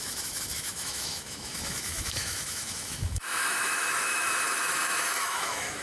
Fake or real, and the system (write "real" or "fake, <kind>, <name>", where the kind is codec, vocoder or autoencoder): fake, autoencoder, DAC-VAE